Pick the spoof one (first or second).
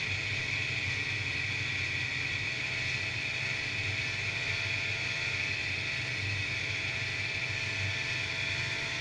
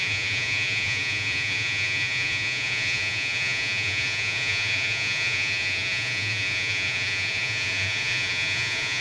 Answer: second